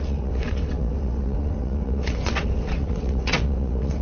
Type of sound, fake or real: fake